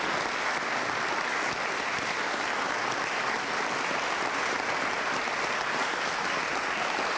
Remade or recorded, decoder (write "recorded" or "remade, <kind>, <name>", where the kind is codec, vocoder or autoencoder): recorded